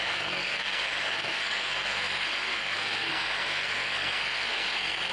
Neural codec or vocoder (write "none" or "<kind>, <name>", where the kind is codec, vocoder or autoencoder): codec, SNAC